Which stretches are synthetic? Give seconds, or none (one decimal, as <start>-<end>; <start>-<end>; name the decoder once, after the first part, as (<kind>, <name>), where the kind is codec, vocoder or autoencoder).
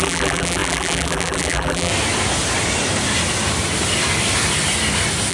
0.0-1.9 (vocoder, BigVGAN v2)